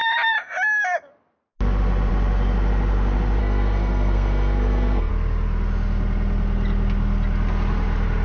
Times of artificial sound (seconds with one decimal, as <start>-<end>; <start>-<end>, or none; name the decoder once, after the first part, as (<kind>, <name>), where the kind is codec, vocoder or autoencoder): 3.4-5.1 (codec, SNAC)